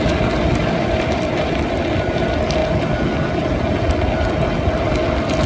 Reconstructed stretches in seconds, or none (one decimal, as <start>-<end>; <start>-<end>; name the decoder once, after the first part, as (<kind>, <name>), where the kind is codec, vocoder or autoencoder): 0.0-2.6 (vocoder, BigVGAN v2)